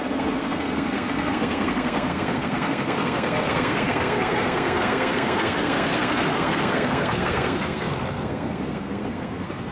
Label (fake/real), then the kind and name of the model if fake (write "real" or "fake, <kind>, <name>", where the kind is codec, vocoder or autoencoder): fake, codec, SNAC